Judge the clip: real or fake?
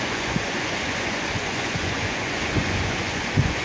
fake